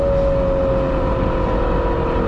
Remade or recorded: recorded